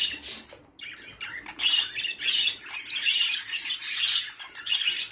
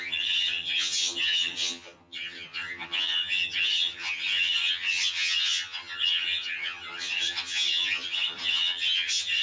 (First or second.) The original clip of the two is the first